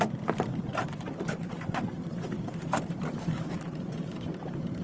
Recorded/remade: remade